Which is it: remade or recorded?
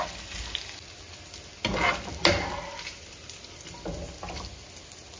recorded